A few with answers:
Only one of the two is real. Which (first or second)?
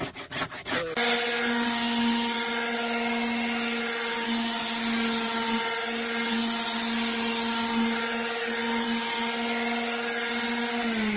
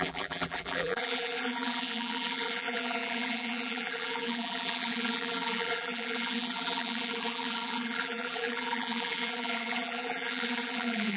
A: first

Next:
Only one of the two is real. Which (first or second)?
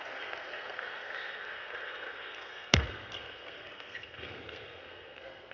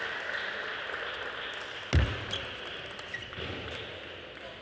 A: second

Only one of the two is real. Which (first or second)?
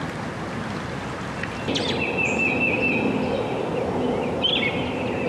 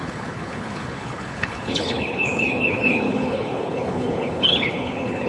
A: first